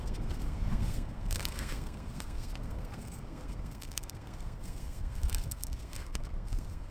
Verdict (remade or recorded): remade